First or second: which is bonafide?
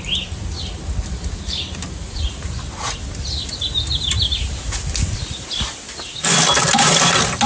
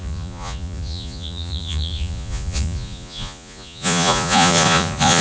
first